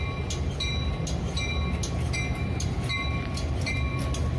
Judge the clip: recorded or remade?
recorded